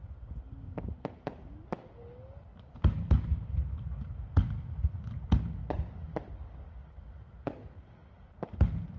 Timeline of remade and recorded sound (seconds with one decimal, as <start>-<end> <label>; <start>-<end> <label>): 0.0-9.0 recorded